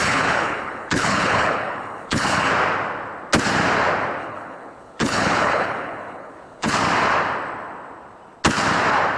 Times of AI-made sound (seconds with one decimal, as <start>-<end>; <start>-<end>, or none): 0.0-2.5; 4.2-6.7

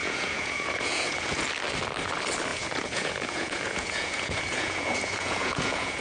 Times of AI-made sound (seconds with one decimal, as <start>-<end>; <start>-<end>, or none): 0.0-1.4; 2.5-6.0

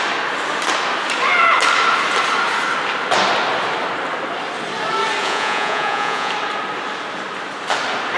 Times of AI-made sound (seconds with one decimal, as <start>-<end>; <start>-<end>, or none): 5.2-6.3

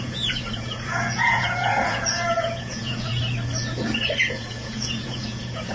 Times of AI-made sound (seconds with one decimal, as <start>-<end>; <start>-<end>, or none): 0.0-3.1; 4.3-5.7

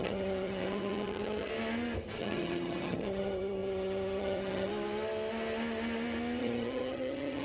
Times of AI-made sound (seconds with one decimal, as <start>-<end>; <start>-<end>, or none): 0.0-1.5; 2.2-4.7; 6.4-7.4

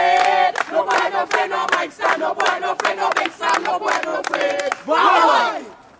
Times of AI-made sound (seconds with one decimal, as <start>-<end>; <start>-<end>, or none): none

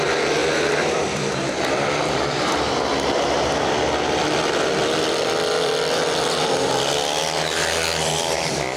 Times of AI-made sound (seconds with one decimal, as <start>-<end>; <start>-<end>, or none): 0.4-2.7; 4.8-6.4